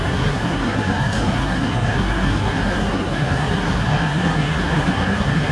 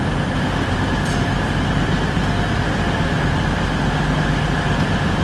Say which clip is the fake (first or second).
first